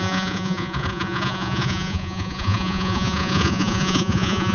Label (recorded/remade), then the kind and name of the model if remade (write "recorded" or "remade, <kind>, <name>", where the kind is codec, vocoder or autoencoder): remade, vocoder, Vocos